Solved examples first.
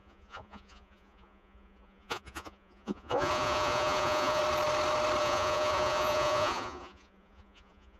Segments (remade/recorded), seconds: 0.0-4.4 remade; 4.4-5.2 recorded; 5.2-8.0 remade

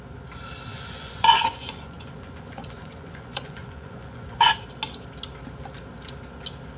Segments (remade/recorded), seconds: 0.0-0.7 recorded; 0.7-4.4 remade; 4.4-6.8 recorded

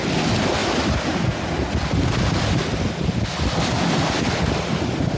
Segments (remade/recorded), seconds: 0.0-5.2 recorded

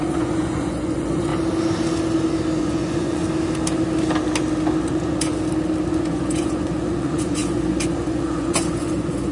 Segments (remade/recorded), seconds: 0.0-1.3 remade; 1.3-2.6 recorded; 2.6-3.2 remade; 3.2-4.8 recorded; 4.8-5.3 remade; 5.3-5.9 recorded; 5.9-9.3 remade

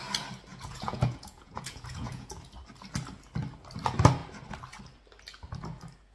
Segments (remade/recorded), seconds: 0.0-0.5 recorded; 0.5-2.3 remade; 2.3-6.1 recorded